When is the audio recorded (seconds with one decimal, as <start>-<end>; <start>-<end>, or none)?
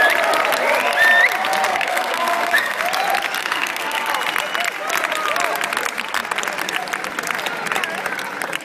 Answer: 0.0-1.7; 2.8-3.4; 4.1-8.6